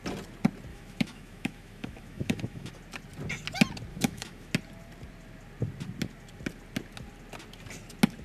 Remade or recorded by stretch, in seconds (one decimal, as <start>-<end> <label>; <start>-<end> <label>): 0.0-0.7 recorded; 0.7-2.7 remade; 2.7-3.9 recorded; 3.9-4.5 remade; 4.5-8.2 recorded